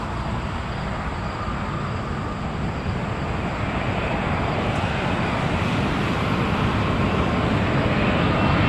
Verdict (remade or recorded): recorded